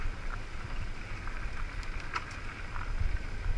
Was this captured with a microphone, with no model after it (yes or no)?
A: yes